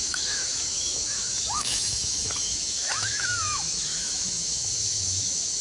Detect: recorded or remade remade